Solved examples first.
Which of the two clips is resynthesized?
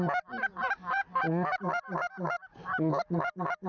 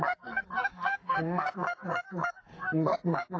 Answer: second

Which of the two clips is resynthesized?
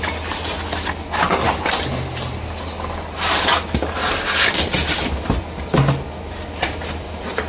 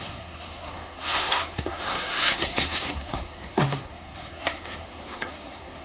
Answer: second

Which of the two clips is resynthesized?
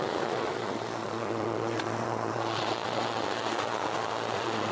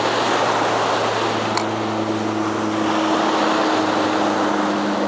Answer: first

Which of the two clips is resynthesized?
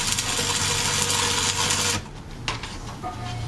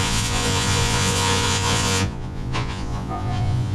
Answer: second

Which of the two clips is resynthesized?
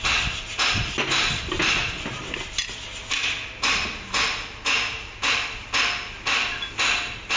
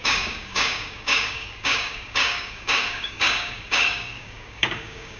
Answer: second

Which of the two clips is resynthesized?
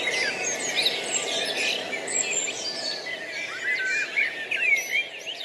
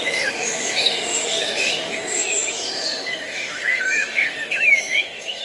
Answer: second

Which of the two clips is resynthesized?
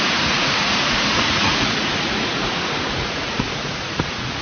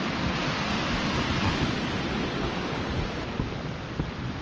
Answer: first